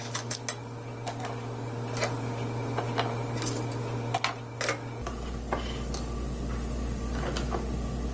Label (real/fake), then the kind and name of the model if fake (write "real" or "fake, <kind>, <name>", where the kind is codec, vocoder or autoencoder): real